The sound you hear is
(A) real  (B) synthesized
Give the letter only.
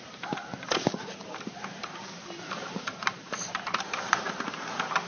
B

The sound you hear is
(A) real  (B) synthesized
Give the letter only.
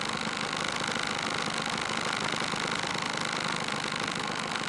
A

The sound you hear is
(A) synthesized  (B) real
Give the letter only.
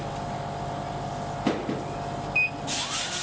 B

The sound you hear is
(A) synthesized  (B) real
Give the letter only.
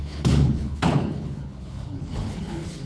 A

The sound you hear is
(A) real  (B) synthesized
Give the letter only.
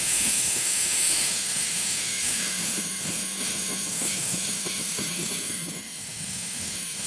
B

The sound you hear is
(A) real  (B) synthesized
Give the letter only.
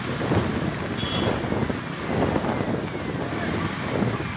A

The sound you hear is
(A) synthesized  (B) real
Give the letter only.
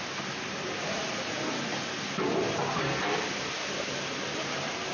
B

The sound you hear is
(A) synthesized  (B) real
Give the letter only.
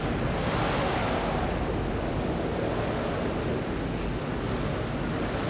B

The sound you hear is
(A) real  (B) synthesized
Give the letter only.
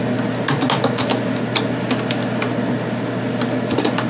A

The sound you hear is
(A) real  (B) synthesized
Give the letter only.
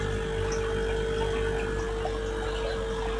A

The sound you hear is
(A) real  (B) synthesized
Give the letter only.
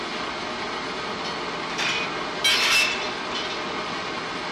A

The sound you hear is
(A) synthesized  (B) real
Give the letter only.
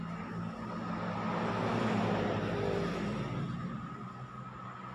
B